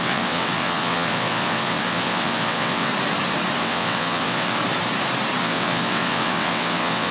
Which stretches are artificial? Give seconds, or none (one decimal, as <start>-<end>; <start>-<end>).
0.0-2.9; 3.6-4.6; 5.4-7.1